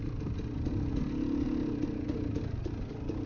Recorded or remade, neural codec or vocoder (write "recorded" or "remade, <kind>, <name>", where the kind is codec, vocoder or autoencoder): recorded